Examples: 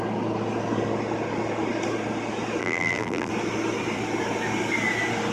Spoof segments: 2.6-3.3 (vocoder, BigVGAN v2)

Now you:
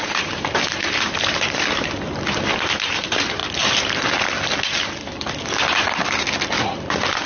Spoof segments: 0.0-3.4 (vocoder, BigVGAN v2)